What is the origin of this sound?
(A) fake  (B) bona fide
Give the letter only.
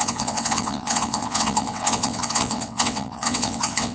A